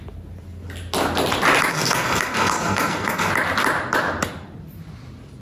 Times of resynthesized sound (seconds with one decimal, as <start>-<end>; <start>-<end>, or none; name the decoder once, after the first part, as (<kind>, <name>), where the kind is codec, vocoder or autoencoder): 1.7-3.3 (codec, SNAC)